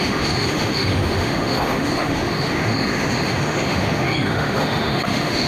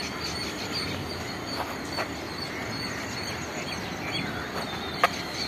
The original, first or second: second